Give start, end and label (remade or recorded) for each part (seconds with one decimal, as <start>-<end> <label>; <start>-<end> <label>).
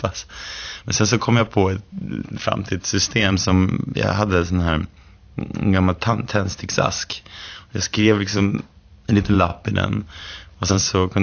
0.0-0.6 remade; 0.6-1.4 recorded; 1.4-3.9 remade; 3.9-7.4 recorded; 7.4-11.2 remade